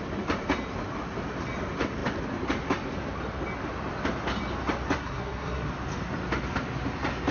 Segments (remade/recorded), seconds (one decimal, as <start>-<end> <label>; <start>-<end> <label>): 0.0-5.0 recorded; 5.0-5.7 remade; 5.7-7.3 recorded